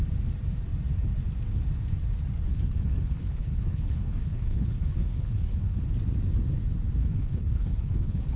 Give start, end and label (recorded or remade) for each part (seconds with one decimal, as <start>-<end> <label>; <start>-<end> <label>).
0.0-2.5 recorded; 2.5-5.8 remade; 5.8-7.0 recorded; 7.0-8.4 remade